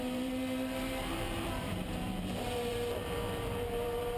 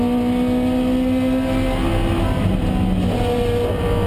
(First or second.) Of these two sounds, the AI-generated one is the first